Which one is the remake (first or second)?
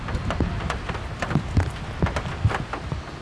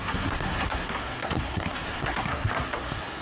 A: second